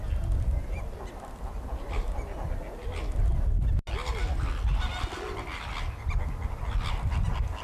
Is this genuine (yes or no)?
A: yes